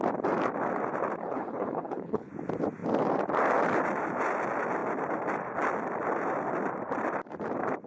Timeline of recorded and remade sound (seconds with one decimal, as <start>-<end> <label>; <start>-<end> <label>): 0.0-1.2 recorded; 1.2-2.3 remade; 2.3-7.9 recorded